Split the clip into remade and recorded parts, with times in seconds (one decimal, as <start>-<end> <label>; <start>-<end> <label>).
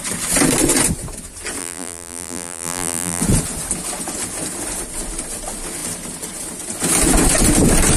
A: 0.0-1.6 recorded; 1.6-3.2 remade; 3.2-8.0 recorded